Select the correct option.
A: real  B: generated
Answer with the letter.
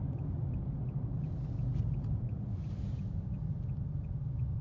A